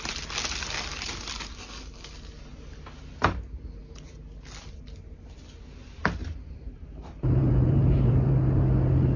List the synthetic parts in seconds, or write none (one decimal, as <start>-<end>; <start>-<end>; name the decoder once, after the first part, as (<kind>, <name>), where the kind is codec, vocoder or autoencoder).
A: 6.2-8.3 (vocoder, BigVGAN v2)